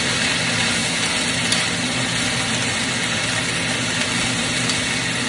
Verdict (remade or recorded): recorded